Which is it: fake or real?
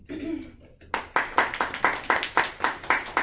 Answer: real